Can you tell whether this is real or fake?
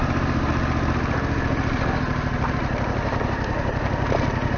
real